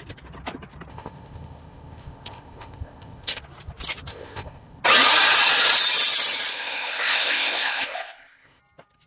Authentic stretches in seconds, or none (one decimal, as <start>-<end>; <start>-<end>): 0.0-0.9; 3.4-4.1; 4.8-6.5; 8.6-9.1